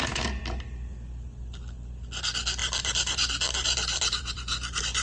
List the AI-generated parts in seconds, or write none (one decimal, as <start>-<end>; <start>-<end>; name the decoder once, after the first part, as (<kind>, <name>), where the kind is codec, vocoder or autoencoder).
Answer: 2.6-5.0 (vocoder, BigVGAN v2)

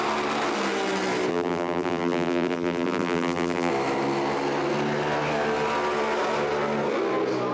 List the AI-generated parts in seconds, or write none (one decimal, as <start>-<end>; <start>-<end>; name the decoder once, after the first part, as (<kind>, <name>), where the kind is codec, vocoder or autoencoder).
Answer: 1.3-3.7 (vocoder, BigVGAN v2)

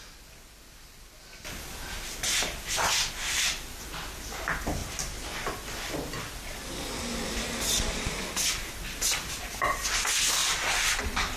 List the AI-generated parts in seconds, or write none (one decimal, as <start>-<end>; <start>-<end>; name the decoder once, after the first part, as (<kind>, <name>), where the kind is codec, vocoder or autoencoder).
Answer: 3.2-3.7 (vocoder, BigVGAN v2); 4.8-7.1

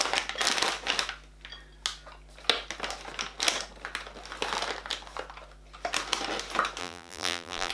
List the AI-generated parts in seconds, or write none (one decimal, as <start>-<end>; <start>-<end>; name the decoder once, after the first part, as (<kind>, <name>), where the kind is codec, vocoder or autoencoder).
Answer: 6.8-7.7 (vocoder, BigVGAN v2)

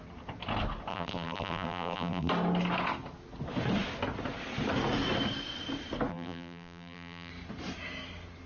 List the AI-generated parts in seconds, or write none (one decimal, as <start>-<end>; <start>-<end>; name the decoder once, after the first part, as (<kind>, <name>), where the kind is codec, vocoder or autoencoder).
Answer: 0.9-2.3 (vocoder, BigVGAN v2); 6.1-7.3

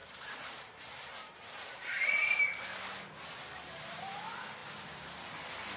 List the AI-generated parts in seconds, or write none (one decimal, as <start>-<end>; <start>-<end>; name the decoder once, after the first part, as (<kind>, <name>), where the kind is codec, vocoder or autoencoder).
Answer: 0.0-2.5 (vocoder, BigVGAN v2)

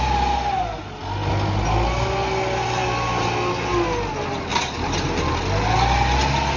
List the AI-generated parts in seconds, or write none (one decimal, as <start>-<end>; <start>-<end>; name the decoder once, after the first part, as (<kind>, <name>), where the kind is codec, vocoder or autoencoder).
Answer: 4.5-5.3 (vocoder, BigVGAN v2)

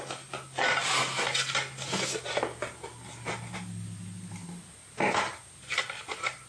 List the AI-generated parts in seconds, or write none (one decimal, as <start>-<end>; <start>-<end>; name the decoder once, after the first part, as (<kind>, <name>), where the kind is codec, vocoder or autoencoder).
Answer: none